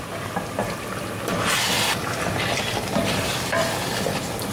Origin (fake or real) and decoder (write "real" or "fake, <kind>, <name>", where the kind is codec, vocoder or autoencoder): fake, vocoder, BigVGAN v2